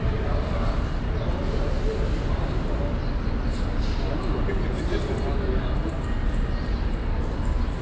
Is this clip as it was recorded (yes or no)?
yes